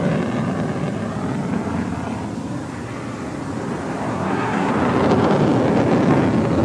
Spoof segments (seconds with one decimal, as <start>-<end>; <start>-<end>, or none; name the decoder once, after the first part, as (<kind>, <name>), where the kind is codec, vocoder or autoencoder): 4.1-4.7 (codec, SNAC)